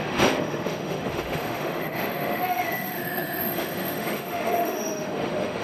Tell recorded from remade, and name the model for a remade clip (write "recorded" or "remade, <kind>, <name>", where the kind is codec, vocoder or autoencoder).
remade, autoencoder, DAC-VAE